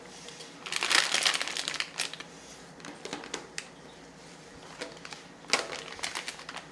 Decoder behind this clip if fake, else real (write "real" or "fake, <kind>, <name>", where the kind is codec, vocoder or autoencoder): real